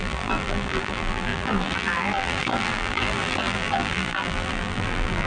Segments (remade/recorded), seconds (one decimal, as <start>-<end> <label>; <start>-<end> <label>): 0.0-5.3 remade